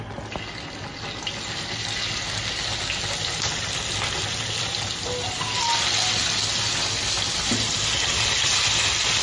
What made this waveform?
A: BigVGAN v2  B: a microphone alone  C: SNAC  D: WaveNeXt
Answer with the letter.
B